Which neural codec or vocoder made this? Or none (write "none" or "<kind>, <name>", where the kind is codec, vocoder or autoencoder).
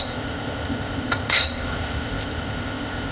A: codec, ZipCodec